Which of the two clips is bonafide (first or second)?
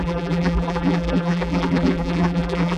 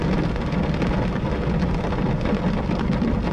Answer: second